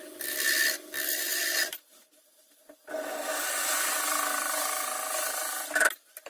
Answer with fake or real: real